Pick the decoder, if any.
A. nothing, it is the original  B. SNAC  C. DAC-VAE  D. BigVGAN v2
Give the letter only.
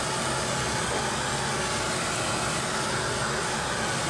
A